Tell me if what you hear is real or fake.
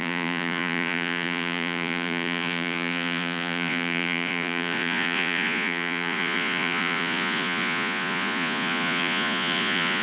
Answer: fake